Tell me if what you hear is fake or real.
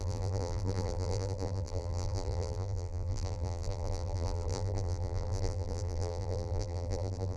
fake